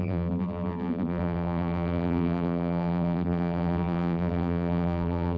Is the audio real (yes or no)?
no